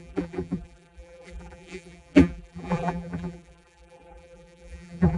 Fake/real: fake